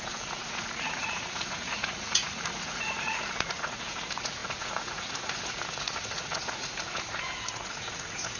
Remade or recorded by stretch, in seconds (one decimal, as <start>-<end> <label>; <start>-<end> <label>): 0.0-8.4 remade